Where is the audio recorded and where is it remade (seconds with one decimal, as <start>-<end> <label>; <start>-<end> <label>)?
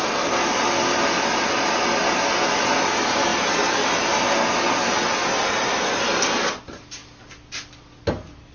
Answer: 0.0-8.5 recorded